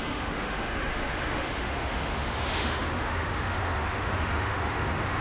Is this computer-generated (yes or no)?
yes